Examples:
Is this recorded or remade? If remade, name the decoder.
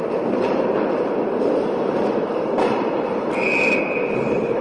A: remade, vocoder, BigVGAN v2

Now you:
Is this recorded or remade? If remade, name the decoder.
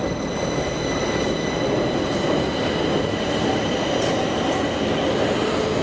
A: recorded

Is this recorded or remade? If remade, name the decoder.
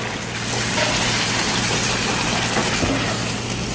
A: recorded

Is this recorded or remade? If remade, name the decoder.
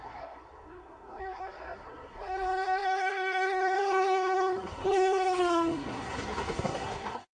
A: remade, codec, SNAC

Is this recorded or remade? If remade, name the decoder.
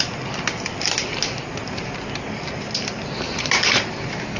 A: recorded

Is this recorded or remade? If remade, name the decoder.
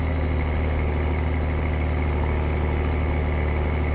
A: recorded